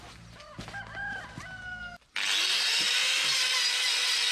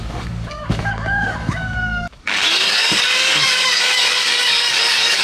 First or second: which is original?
first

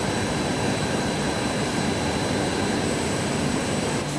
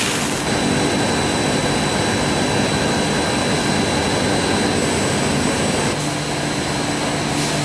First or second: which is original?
second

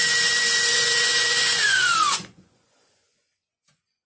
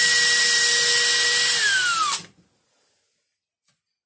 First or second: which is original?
second